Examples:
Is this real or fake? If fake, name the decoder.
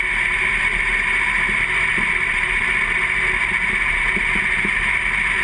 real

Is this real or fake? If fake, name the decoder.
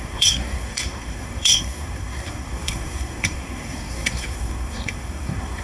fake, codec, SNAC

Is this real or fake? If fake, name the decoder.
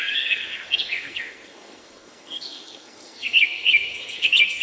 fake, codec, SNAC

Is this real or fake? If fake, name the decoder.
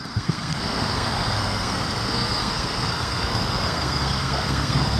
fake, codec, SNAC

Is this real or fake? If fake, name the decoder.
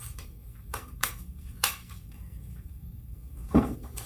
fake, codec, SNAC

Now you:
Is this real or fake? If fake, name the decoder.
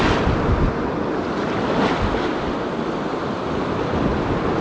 real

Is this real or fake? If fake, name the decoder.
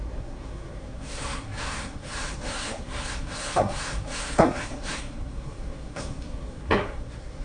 fake, codec, SNAC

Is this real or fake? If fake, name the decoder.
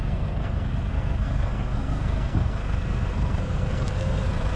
fake, codec, SNAC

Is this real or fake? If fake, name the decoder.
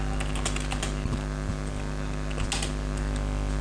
real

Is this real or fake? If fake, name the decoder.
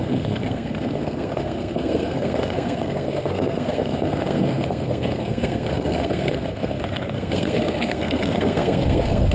fake, codec, SNAC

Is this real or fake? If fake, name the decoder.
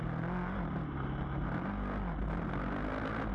real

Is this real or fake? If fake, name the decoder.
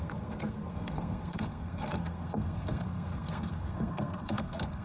fake, codec, SNAC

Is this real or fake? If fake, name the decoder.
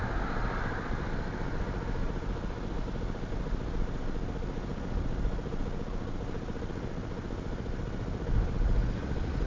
real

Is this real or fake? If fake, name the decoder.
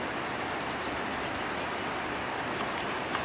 real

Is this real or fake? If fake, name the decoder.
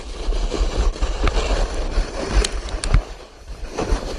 real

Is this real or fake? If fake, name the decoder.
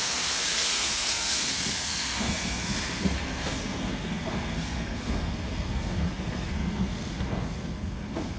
fake, codec, SNAC